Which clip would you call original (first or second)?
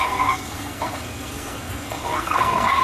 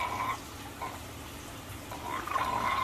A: second